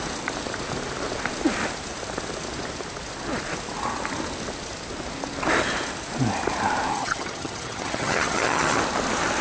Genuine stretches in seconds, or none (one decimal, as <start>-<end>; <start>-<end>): 0.0-6.9; 8.8-9.4